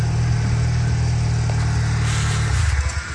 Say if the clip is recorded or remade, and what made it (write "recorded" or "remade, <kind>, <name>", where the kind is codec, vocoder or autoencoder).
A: recorded